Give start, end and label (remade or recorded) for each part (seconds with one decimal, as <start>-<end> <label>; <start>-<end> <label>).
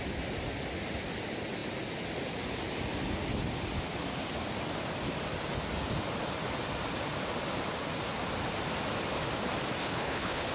0.0-9.8 recorded; 9.8-10.5 remade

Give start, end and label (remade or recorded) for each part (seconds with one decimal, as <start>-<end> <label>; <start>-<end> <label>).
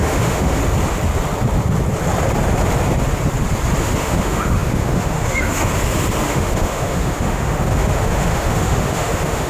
0.0-0.6 remade; 0.6-3.8 recorded; 3.8-5.7 remade; 5.7-6.2 recorded; 6.2-9.5 remade